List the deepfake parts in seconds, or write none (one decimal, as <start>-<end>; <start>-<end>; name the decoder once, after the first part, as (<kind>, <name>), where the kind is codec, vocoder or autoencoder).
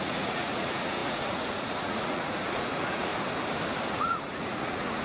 0.0-3.1 (vocoder, Vocos); 3.9-5.0